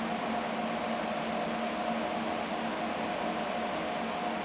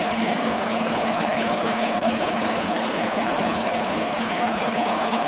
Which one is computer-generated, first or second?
second